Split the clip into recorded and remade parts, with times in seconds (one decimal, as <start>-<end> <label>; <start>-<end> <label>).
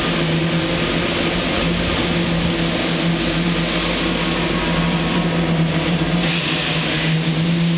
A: 0.0-7.8 recorded